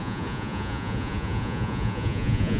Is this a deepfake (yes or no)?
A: yes